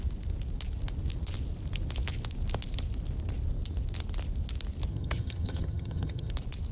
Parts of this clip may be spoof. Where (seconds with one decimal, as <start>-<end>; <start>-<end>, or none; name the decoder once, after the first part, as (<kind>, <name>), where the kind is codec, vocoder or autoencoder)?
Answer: 4.9-6.3 (vocoder, HiFi-GAN)